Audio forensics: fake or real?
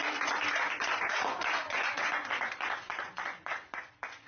fake